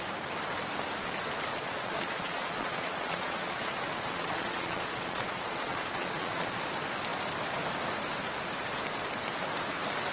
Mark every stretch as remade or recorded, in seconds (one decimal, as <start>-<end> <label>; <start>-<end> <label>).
0.0-1.5 recorded; 1.5-6.6 remade; 6.6-10.1 recorded